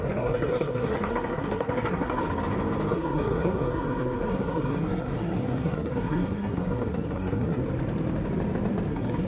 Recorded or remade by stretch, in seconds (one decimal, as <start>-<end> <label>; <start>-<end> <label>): 0.0-2.2 remade; 2.2-2.9 recorded; 2.9-7.6 remade; 7.6-8.9 recorded; 8.9-9.3 remade